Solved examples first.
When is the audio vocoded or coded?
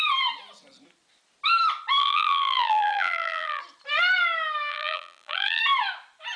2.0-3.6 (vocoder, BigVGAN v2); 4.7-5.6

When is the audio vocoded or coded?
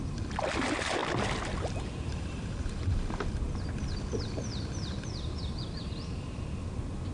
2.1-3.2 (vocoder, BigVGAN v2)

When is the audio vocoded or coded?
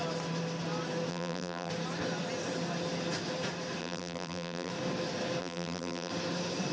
1.1-1.7 (vocoder, BigVGAN v2); 3.8-4.7; 5.4-6.1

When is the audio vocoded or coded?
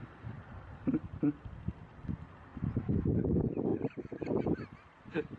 none